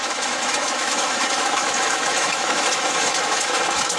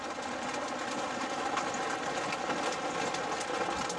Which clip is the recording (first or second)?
second